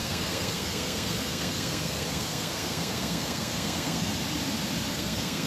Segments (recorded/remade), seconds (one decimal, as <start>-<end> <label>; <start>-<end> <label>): 0.0-4.1 remade; 4.1-4.9 recorded; 4.9-5.5 remade